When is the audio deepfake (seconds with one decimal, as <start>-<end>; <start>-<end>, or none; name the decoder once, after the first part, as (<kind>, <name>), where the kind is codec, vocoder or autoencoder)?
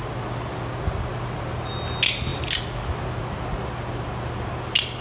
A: none